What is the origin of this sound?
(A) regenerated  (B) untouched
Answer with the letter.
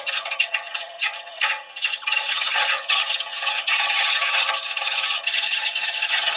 A